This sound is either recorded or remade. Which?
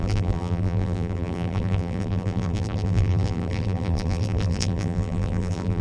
remade